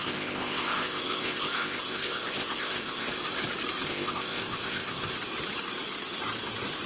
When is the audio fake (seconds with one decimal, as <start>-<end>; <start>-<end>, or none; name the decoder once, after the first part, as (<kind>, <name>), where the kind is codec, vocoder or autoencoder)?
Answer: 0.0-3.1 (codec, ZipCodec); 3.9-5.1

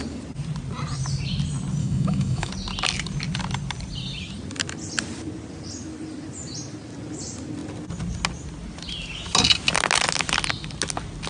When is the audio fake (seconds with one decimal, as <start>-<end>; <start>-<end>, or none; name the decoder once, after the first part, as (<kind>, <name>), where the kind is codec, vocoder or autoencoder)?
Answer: 1.8-2.5 (autoencoder, DAC-VAE)

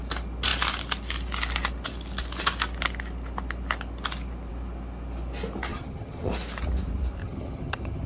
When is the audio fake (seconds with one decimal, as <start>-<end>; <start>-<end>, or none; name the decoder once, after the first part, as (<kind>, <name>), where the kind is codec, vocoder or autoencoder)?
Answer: 5.7-6.3 (vocoder, HiFi-GAN); 7.2-8.1

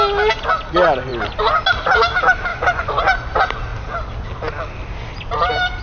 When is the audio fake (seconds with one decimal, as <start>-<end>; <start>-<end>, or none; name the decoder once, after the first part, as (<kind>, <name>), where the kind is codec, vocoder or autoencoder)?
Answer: 2.5-3.0 (vocoder, Vocos)

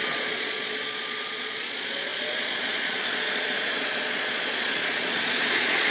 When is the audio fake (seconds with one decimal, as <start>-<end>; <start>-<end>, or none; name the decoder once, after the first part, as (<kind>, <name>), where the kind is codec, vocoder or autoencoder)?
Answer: 0.0-5.9 (vocoder, Vocos)

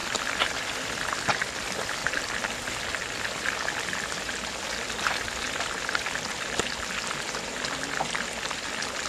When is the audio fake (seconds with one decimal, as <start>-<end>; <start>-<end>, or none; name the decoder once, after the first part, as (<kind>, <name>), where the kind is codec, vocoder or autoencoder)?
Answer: 0.0-0.5 (vocoder, BigVGAN v2)

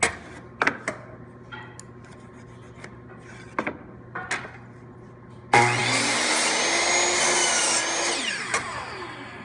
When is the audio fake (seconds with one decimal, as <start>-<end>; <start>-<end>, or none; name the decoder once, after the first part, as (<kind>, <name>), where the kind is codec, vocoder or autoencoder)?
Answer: none